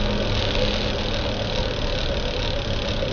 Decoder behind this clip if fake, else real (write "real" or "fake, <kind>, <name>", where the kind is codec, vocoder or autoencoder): real